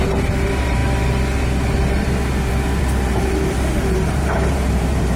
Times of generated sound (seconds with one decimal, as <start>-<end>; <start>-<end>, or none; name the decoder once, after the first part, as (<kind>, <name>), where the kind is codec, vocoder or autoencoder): 0.0-0.8 (vocoder, BigVGAN v2); 2.8-5.2